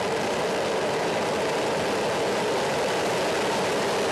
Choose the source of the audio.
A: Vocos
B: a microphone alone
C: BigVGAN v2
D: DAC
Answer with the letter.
B